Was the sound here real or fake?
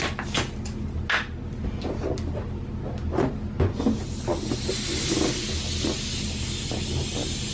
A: real